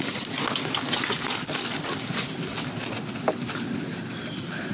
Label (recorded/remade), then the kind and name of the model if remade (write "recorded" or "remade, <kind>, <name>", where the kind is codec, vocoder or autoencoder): recorded